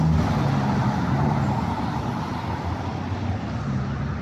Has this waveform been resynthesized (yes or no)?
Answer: no